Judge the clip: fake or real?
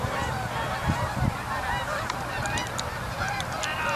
fake